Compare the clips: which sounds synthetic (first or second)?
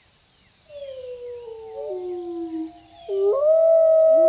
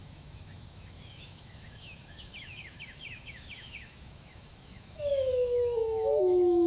second